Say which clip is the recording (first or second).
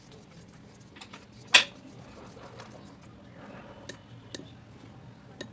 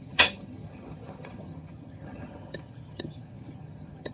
first